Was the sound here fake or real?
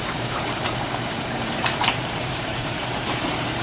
fake